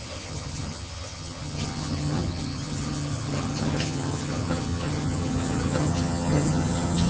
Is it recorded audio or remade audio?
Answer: remade